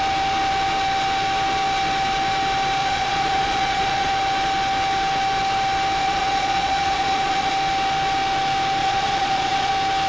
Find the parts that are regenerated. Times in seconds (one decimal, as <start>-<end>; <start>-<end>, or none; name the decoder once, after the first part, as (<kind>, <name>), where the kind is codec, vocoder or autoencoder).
2.8-4.1 (vocoder, Vocos); 6.0-7.5; 8.8-9.7

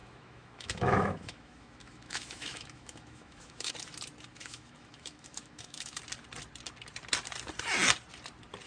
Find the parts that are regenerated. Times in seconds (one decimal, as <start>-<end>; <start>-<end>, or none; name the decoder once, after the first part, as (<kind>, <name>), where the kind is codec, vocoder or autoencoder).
0.0-3.7 (autoencoder, DAC-VAE); 4.3-6.0

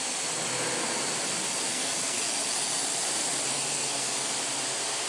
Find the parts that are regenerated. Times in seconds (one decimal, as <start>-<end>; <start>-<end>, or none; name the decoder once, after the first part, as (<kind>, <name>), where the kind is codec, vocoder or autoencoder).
1.7-2.2 (codec, SNAC); 3.5-4.3

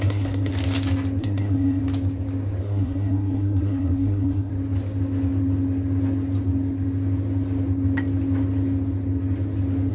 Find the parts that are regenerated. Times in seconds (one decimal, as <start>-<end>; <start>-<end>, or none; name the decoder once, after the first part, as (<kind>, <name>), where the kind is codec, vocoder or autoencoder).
0.0-0.5 (codec, SNAC); 1.2-1.8; 2.6-4.5

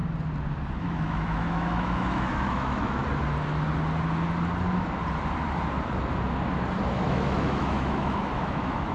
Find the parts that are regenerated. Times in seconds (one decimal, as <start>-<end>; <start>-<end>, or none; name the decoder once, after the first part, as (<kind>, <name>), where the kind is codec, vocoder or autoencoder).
0.8-3.0 (autoencoder, DAC-VAE); 6.9-8.9